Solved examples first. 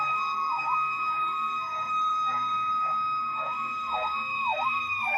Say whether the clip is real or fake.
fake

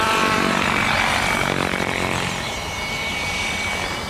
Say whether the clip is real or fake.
fake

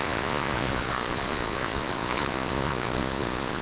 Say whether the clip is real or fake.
fake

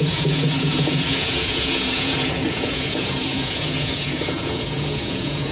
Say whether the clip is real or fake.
fake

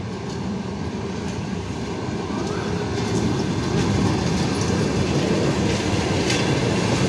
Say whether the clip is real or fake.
real